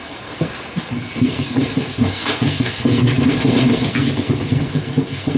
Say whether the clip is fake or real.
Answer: fake